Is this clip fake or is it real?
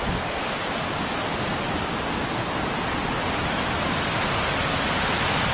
real